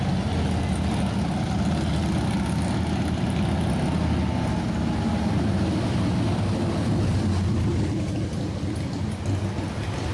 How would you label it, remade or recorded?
recorded